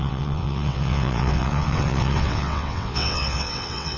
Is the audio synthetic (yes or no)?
yes